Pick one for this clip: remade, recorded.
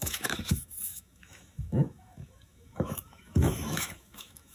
remade